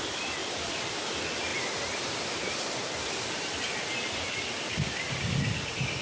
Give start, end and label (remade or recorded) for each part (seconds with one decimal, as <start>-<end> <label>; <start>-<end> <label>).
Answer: 0.0-1.5 remade; 1.5-5.1 recorded; 5.1-6.0 remade